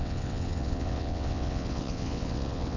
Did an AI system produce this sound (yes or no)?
yes